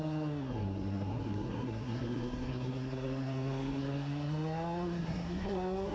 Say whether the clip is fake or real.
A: fake